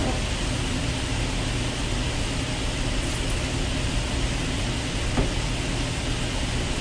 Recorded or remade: recorded